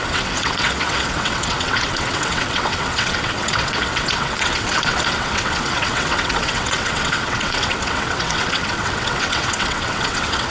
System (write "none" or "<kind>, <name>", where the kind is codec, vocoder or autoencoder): vocoder, WaveNeXt